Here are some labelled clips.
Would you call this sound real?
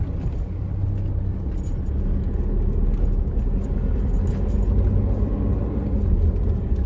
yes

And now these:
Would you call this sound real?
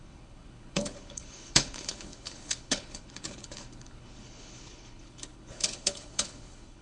no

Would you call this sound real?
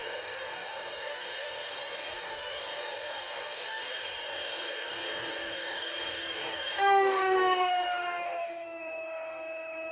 no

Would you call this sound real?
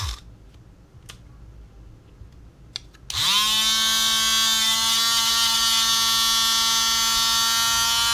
yes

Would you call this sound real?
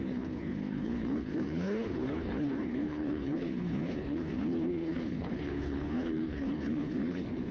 no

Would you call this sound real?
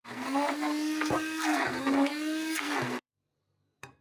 no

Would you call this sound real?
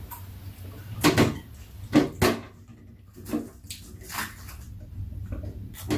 yes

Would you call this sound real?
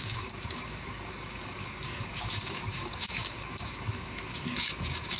no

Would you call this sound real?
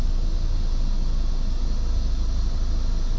yes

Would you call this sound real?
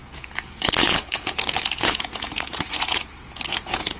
no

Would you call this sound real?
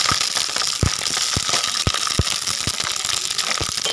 yes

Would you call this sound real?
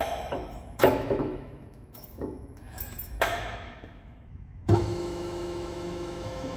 no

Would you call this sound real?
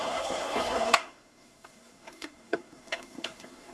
no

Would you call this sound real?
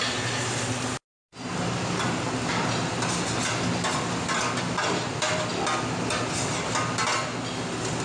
yes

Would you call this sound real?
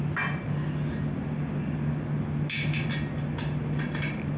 yes